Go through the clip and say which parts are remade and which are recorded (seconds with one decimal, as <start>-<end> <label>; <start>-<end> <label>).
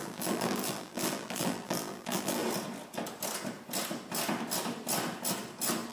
0.0-2.4 remade; 2.4-5.9 recorded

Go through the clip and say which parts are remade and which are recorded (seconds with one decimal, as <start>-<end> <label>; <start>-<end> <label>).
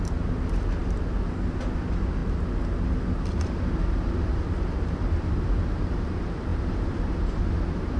0.0-2.2 recorded; 2.2-6.0 remade; 6.0-6.5 recorded; 6.5-7.4 remade; 7.4-8.0 recorded